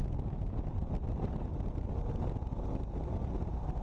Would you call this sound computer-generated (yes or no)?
no